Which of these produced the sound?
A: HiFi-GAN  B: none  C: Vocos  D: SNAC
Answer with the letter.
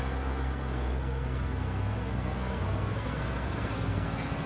D